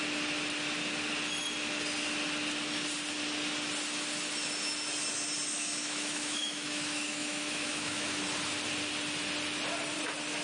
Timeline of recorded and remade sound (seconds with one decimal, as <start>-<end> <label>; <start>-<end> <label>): 0.0-5.5 recorded; 5.5-8.2 remade; 8.2-10.4 recorded